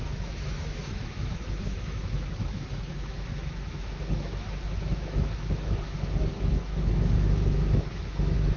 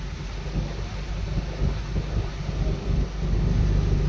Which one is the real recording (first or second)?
second